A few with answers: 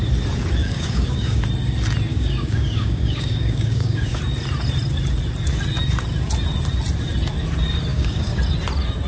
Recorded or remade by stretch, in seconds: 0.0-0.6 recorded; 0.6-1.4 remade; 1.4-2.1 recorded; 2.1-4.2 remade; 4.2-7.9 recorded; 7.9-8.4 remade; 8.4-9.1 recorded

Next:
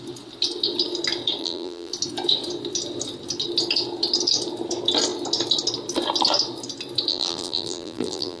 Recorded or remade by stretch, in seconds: 0.0-1.4 recorded; 1.4-1.9 remade; 1.9-7.1 recorded; 7.1-8.4 remade